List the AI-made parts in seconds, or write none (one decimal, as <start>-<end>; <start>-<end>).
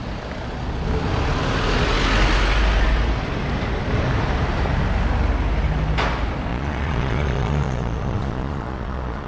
6.5-9.3